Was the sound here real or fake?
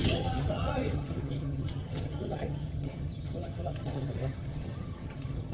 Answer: fake